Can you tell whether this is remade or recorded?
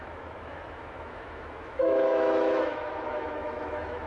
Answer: remade